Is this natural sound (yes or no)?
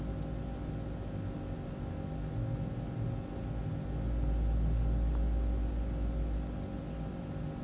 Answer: yes